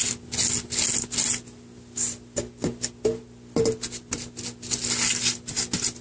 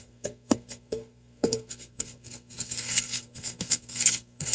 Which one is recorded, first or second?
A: first